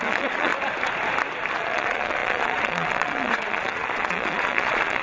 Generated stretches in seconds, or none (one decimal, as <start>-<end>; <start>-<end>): 0.0-0.5; 1.5-5.0